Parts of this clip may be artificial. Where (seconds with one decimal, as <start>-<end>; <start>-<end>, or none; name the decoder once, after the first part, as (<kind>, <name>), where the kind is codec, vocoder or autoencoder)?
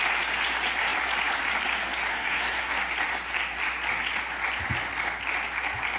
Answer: 2.1-2.7 (codec, SNAC)